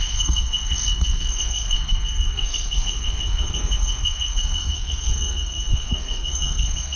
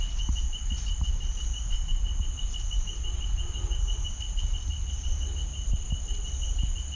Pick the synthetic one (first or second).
first